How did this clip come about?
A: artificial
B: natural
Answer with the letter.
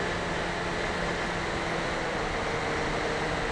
B